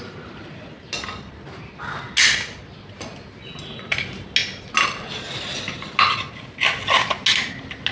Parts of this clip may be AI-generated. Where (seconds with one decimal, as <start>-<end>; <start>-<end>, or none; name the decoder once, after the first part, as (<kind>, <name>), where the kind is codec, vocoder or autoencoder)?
none